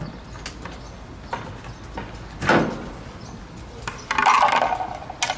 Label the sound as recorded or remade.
recorded